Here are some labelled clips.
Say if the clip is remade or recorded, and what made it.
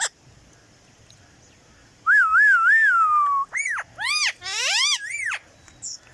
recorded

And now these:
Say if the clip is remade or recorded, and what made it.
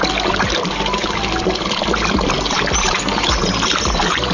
recorded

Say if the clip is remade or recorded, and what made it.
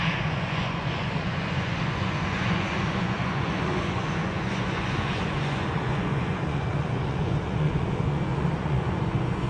remade, vocoder, Vocos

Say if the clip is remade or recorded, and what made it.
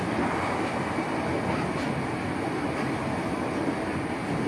recorded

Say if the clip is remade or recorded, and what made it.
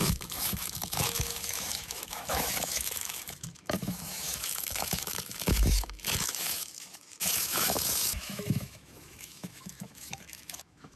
remade, autoencoder, DAC-VAE